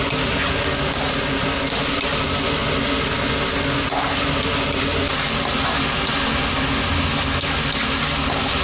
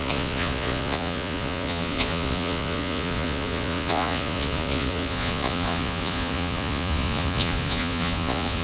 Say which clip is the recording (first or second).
first